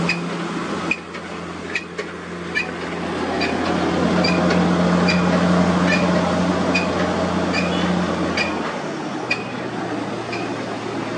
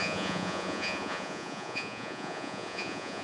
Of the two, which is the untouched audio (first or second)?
first